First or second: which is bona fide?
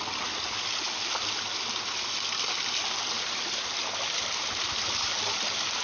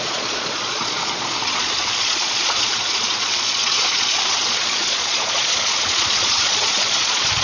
first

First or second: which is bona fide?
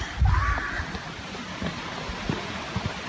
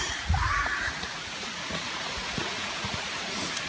first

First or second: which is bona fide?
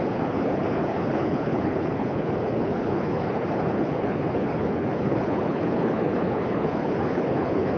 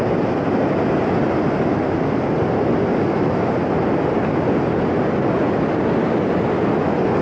second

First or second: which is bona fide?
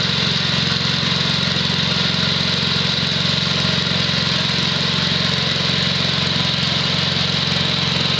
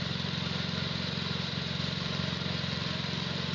first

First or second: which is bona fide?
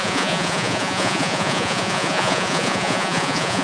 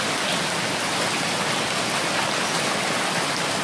second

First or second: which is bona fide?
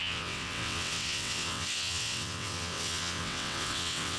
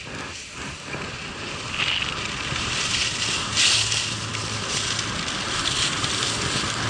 second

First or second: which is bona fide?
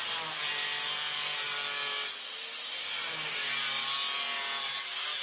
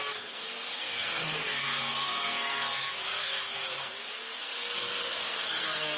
first